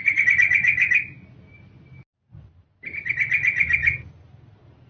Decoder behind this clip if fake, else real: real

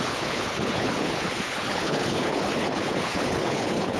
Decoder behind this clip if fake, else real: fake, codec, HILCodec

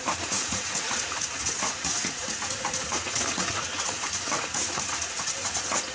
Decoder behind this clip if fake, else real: fake, vocoder, Vocos